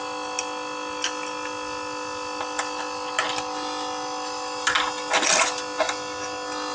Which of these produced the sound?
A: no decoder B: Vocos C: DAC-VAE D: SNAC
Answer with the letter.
A